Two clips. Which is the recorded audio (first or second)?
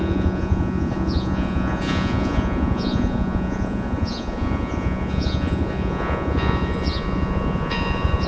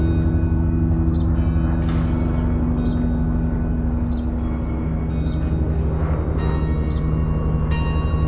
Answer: second